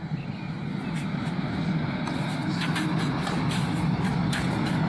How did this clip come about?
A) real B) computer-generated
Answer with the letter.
A